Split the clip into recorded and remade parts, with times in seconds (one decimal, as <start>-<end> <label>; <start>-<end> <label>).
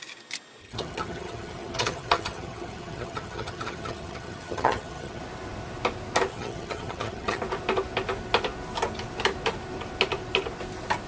0.0-0.6 recorded; 0.6-5.2 remade; 5.2-6.3 recorded; 6.3-7.4 remade; 7.4-11.1 recorded